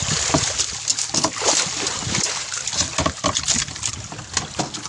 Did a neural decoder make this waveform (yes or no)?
no